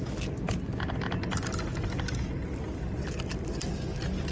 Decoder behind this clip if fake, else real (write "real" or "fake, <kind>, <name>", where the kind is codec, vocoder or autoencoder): real